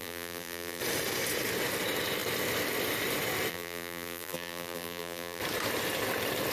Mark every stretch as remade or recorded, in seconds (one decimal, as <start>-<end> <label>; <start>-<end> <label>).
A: 0.0-0.8 remade; 0.8-3.5 recorded; 3.5-5.4 remade; 5.4-6.5 recorded